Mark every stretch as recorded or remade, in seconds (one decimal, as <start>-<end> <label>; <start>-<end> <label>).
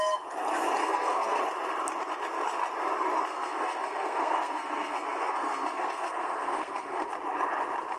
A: 0.0-0.8 recorded; 0.8-1.4 remade; 1.4-3.3 recorded; 3.3-7.1 remade; 7.1-8.0 recorded